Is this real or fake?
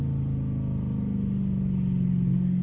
real